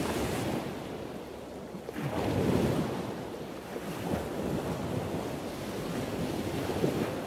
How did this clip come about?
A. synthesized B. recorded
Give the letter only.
B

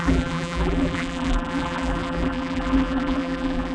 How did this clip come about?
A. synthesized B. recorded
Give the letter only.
A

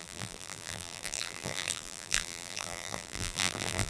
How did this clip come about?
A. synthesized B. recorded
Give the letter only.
A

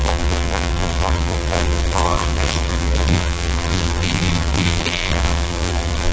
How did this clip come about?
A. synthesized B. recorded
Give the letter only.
A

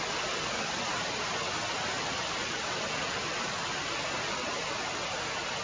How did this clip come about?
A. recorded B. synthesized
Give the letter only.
A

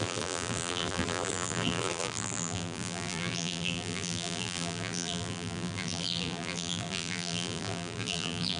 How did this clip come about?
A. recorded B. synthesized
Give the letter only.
B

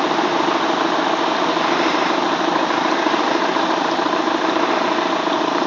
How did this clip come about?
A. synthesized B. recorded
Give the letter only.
B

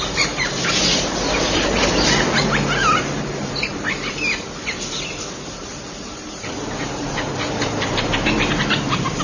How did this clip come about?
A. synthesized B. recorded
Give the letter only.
A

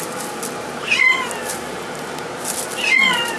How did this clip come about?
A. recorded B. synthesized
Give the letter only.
A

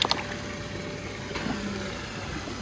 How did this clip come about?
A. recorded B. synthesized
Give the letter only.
A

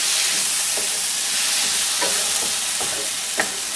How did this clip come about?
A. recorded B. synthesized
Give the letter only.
A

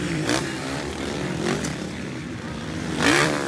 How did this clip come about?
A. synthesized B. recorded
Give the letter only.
A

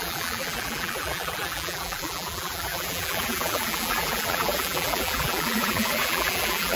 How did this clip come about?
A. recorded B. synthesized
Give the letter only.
B